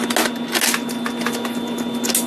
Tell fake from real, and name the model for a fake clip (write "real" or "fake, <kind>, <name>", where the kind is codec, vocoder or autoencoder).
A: real